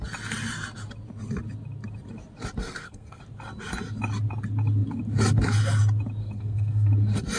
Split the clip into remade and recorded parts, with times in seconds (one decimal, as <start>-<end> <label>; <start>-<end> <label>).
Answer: 0.0-2.6 recorded; 2.6-3.2 remade; 3.2-6.2 recorded; 6.2-6.9 remade; 6.9-7.4 recorded